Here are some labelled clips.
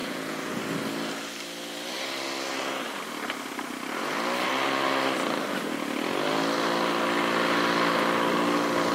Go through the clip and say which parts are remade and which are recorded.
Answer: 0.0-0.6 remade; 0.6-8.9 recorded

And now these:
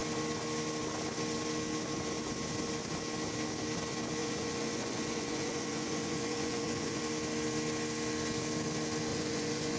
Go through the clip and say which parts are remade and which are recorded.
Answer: 0.0-4.2 recorded; 4.2-7.0 remade; 7.0-9.1 recorded; 9.1-9.8 remade

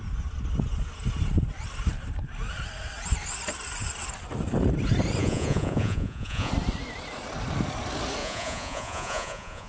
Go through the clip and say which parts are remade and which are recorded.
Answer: 0.0-5.2 recorded; 5.2-6.5 remade; 6.5-8.2 recorded; 8.2-9.7 remade

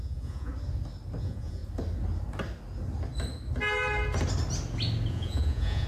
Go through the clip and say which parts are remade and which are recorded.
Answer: 0.0-0.5 remade; 0.5-1.2 recorded; 1.2-1.6 remade; 1.6-5.1 recorded; 5.1-5.9 remade

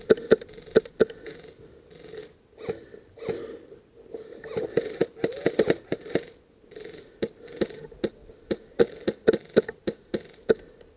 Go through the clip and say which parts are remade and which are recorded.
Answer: 0.0-11.0 recorded